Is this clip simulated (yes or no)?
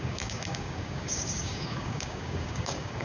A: yes